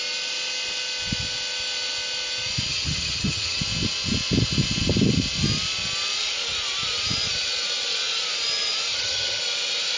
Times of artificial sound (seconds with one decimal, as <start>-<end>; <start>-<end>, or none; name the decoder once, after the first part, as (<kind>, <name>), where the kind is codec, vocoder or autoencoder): 2.7-3.6 (vocoder, HiFi-GAN); 8.9-9.4